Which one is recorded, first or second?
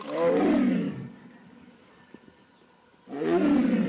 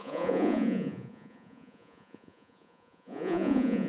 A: first